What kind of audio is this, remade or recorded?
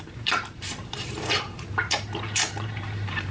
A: remade